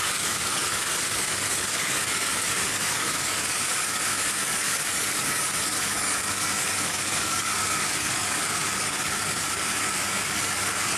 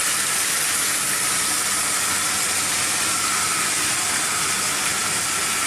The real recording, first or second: second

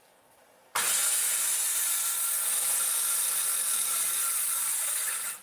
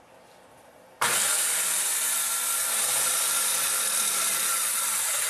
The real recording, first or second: first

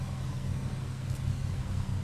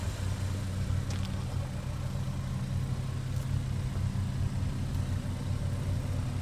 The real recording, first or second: second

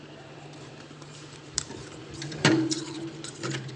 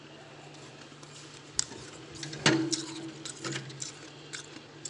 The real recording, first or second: second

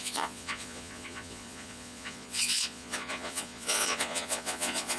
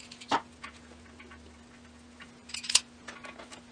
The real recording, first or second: second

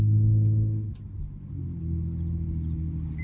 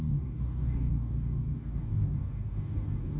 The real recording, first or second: first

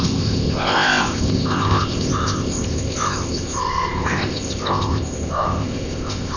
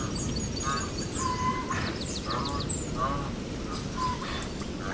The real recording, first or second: second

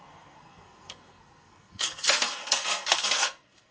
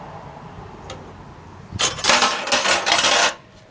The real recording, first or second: second